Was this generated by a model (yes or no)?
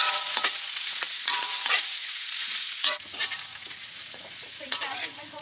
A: yes